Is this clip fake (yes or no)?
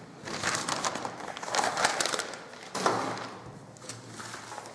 no